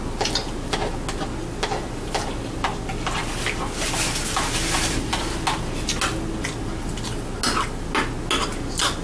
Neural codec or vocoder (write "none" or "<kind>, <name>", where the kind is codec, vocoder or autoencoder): none